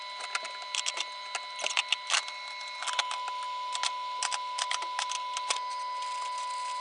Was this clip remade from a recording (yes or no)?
no